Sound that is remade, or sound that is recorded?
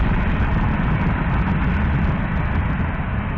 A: recorded